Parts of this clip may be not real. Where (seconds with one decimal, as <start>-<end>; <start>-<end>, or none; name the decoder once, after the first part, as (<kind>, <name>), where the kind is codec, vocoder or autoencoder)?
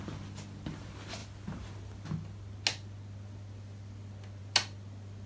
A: none